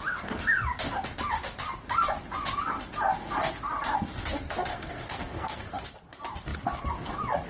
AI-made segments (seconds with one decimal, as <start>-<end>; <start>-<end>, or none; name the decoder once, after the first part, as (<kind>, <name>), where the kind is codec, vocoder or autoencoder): 4.7-5.8 (codec, SNAC)